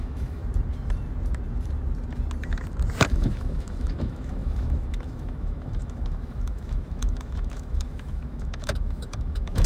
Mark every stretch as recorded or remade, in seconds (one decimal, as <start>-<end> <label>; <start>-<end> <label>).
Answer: 0.0-0.4 remade; 0.4-3.1 recorded; 3.1-9.7 remade